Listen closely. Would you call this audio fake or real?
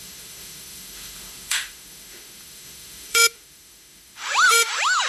fake